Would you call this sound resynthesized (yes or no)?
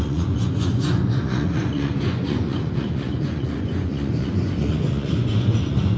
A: yes